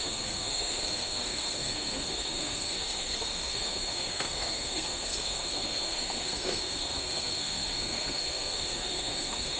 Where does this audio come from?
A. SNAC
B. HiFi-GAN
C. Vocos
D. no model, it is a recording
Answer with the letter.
A